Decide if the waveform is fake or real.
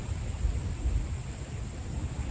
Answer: real